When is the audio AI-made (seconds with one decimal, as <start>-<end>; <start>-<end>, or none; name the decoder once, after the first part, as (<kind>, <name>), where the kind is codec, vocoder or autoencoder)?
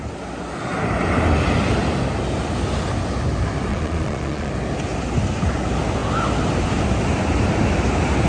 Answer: 3.7-4.5 (vocoder, Vocos)